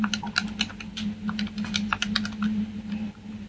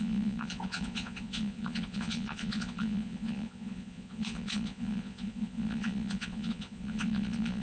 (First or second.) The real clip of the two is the first